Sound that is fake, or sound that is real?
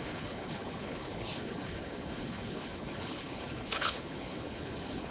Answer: fake